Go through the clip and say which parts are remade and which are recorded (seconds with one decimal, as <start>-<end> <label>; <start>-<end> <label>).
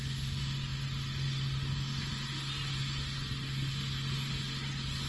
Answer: 0.0-5.1 recorded